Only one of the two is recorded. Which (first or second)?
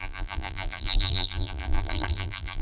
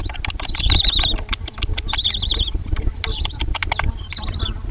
second